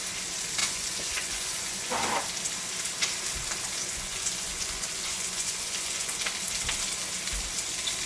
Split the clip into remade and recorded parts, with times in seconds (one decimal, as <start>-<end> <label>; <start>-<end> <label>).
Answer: 0.0-0.6 recorded; 0.6-1.9 remade; 1.9-3.8 recorded; 3.8-6.2 remade; 6.2-8.1 recorded